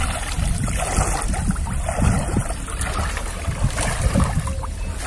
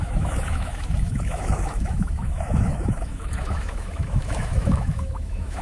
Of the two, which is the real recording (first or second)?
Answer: first